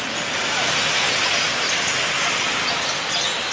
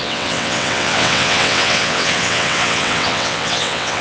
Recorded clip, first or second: first